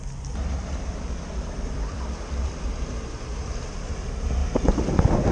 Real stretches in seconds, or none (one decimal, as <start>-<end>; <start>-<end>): 4.4-5.3